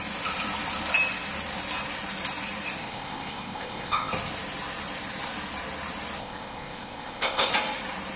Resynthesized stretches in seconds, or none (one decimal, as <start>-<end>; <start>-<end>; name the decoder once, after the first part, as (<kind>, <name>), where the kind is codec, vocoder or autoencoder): 2.8-4.1 (codec, ZipCodec); 6.2-7.5

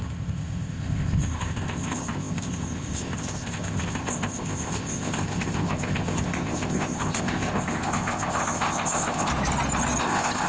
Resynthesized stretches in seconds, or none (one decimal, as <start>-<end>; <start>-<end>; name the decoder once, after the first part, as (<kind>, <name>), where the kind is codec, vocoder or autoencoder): 0.0-9.3 (codec, ZipCodec); 10.0-10.5

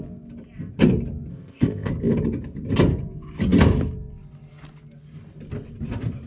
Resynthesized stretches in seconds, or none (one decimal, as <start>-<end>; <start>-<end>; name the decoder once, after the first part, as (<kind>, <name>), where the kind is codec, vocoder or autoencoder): 1.3-1.9 (codec, ZipCodec)

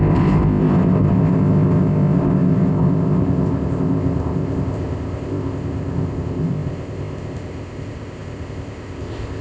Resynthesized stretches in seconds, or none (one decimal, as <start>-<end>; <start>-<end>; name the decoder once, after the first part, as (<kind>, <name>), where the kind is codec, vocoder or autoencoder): 0.0-9.4 (codec, ZipCodec)

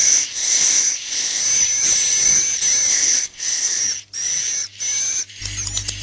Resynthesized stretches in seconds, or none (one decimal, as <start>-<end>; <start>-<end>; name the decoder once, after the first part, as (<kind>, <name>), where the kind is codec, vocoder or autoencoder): 0.0-1.4 (codec, ZipCodec); 2.9-3.8